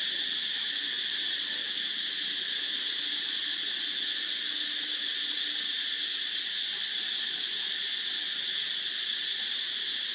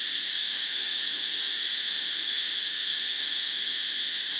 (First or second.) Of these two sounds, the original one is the first